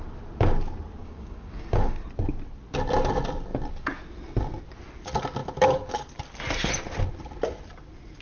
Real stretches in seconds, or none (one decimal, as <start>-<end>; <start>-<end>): 0.0-1.0; 2.0-8.2